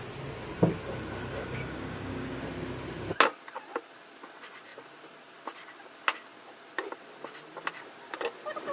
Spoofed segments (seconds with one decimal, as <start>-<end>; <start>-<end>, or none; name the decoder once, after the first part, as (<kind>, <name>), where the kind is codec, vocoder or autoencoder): 1.4-2.4 (codec, DAC)